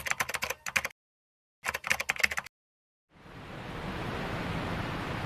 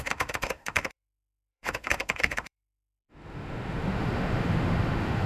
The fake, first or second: second